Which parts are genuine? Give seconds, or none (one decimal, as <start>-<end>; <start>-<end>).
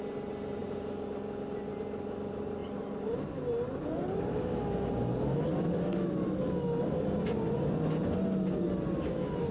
0.0-9.5